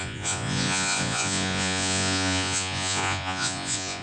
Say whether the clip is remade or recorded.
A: remade